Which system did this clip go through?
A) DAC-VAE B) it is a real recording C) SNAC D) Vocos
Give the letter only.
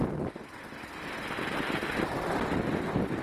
B